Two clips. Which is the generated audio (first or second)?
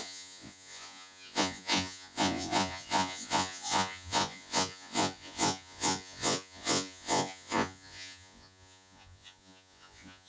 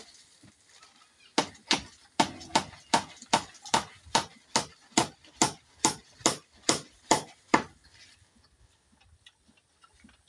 first